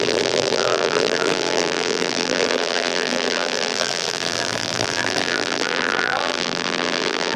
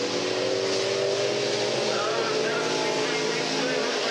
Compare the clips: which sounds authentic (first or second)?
second